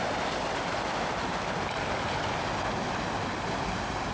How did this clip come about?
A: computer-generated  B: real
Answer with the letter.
B